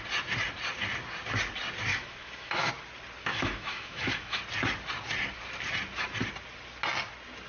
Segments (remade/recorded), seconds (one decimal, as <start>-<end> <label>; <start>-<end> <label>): 0.0-1.9 recorded; 1.9-2.7 remade; 2.7-3.3 recorded; 3.3-4.4 remade; 4.4-7.5 recorded